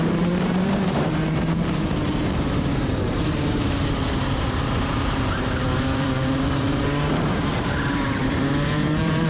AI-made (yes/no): yes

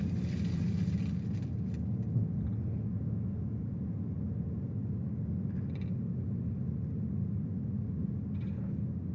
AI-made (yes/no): no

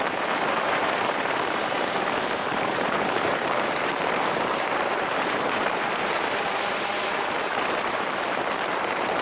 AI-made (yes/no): yes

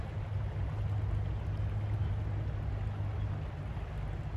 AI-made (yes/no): no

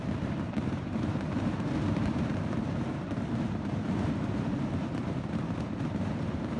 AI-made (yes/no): yes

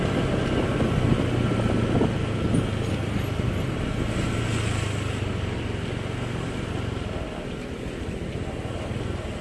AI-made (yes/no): no